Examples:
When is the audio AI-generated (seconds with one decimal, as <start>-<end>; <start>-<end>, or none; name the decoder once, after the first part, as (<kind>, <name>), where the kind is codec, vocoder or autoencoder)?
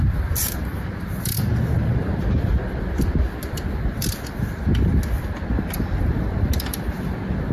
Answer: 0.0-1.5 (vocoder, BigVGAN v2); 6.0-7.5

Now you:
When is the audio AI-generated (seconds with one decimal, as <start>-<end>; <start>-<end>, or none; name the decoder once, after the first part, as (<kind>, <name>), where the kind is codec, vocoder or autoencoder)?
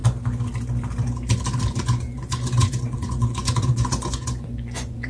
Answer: 1.8-5.1 (vocoder, Vocos)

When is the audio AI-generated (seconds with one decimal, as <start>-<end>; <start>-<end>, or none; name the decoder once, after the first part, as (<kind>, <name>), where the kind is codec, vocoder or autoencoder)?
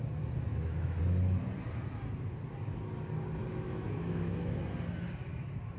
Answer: 0.5-1.0 (autoencoder, DAC-VAE); 3.4-4.6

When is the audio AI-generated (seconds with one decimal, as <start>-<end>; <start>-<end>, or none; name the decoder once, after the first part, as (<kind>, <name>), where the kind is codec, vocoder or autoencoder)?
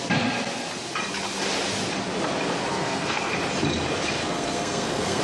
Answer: 2.7-3.3 (codec, SNAC); 4.2-5.2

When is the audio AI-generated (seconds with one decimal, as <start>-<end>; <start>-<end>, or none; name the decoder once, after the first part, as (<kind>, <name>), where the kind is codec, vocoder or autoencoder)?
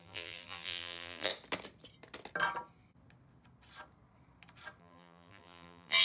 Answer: 0.0-1.3 (vocoder, BigVGAN v2); 4.8-6.0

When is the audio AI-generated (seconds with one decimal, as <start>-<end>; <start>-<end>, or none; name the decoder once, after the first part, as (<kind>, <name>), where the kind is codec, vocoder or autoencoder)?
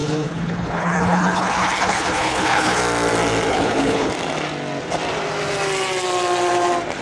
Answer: 0.0-2.8 (codec, HILCodec); 3.5-4.1